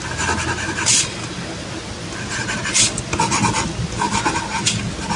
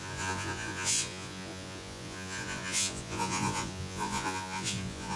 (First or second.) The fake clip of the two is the second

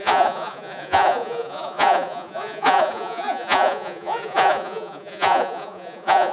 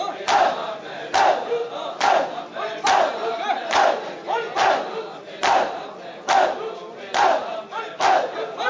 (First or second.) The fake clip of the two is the first